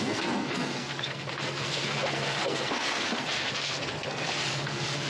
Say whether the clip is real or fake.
fake